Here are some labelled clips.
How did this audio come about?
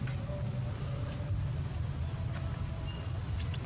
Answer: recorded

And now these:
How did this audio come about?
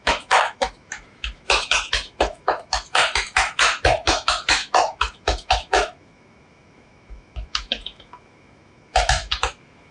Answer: remade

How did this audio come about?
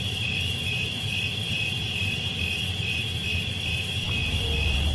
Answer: remade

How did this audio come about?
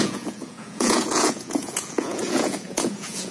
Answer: remade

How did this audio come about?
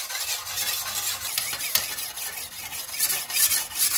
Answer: remade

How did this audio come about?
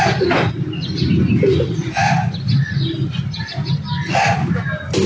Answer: recorded